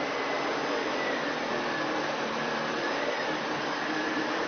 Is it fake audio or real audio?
fake